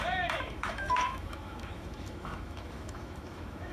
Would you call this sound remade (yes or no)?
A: yes